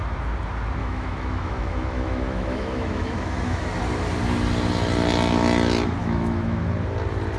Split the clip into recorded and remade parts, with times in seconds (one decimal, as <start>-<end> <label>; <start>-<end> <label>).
0.0-0.8 recorded; 0.8-3.7 remade; 3.7-6.0 recorded; 6.0-6.6 remade; 6.6-7.4 recorded